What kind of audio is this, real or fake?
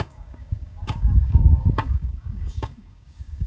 fake